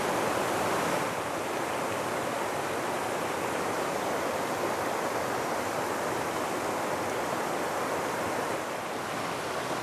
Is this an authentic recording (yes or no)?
yes